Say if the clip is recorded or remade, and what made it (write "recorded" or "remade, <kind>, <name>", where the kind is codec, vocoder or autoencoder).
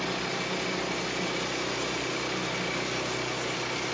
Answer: recorded